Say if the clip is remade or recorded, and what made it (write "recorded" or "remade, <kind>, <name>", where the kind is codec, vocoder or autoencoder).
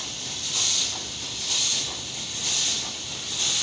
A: recorded